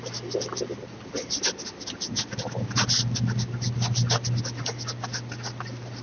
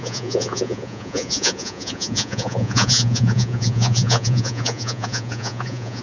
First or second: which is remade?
second